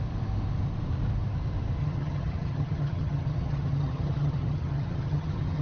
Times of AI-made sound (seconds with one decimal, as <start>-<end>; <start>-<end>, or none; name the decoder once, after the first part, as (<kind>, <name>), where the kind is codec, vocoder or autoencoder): 1.8-5.6 (vocoder, HiFi-GAN)